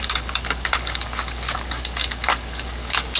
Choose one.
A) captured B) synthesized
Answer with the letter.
B